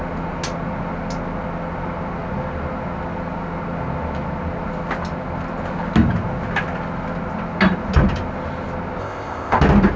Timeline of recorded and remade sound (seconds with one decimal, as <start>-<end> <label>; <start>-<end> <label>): 0.0-9.0 recorded; 9.0-9.6 remade; 9.6-10.0 recorded